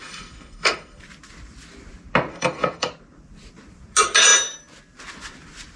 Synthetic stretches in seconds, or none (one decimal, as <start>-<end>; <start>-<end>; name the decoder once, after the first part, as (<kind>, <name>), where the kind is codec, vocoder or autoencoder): 0.0-1.0 (codec, SNAC); 2.3-2.9